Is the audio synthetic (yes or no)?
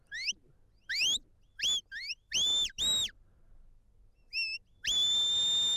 no